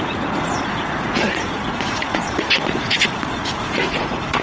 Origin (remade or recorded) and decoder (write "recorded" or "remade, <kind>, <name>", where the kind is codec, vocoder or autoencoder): remade, vocoder, Vocos